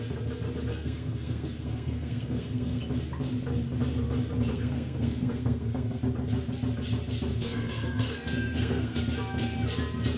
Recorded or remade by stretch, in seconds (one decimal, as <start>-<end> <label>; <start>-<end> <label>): 0.0-0.7 recorded; 0.7-2.8 remade; 2.8-4.5 recorded; 4.5-6.0 remade; 6.0-7.3 recorded; 7.3-9.0 remade; 9.0-10.2 recorded